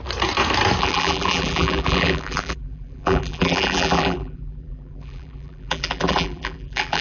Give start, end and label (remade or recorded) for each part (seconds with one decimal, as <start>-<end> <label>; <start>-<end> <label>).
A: 0.0-0.8 recorded; 0.8-7.0 remade